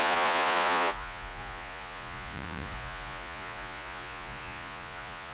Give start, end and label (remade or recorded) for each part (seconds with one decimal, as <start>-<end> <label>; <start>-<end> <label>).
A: 0.0-5.3 remade